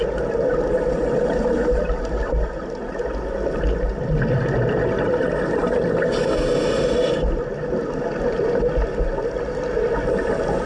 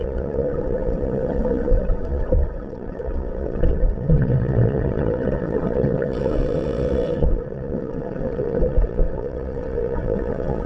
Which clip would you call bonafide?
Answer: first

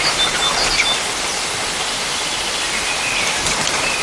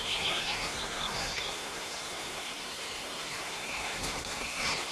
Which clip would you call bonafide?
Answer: first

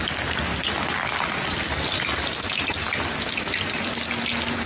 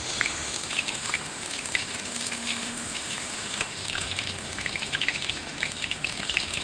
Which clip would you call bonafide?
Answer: first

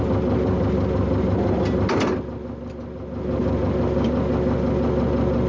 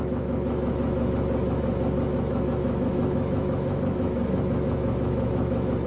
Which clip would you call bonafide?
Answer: first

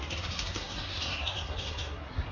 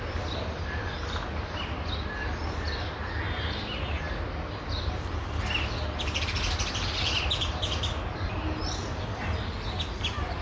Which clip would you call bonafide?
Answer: second